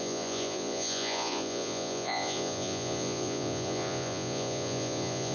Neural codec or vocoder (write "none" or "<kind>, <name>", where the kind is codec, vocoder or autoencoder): vocoder, Vocos